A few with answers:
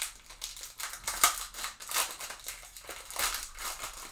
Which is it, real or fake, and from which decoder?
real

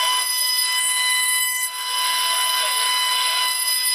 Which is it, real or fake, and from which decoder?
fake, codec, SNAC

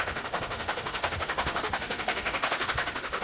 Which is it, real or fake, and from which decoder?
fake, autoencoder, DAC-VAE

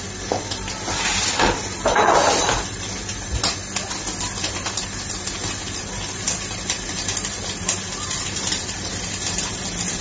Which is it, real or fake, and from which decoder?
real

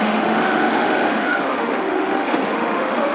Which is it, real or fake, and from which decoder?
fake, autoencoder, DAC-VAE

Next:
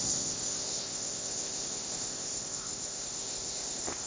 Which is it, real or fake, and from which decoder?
fake, codec, ZipCodec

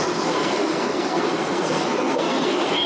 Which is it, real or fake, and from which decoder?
fake, codec, SNAC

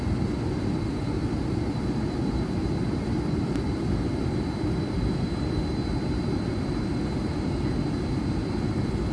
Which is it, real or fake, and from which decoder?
fake, vocoder, BigVGAN v2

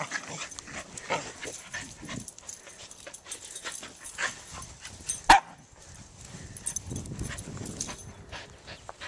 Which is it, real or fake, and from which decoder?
real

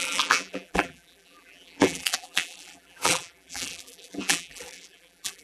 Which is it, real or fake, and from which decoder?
fake, vocoder, BigVGAN v2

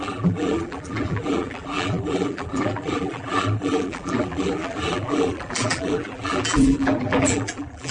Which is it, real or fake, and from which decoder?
fake, vocoder, BigVGAN v2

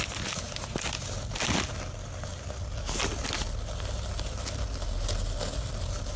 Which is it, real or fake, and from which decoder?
real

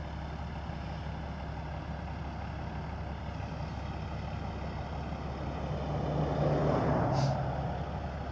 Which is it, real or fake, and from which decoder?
real